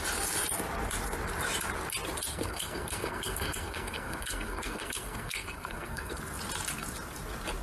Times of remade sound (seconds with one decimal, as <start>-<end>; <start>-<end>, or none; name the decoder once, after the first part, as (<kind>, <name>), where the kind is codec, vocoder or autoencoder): 2.3-6.2 (codec, SNAC)